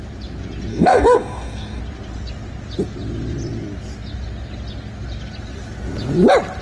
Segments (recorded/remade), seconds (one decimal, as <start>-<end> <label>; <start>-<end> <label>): 0.0-0.7 recorded; 0.7-1.8 remade; 1.8-6.6 recorded